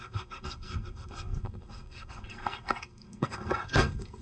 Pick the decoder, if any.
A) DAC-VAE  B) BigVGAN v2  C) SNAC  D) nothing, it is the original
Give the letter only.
C